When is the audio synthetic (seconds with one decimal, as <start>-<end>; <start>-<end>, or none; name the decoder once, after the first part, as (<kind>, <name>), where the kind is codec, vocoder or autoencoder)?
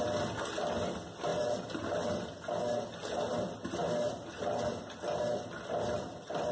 none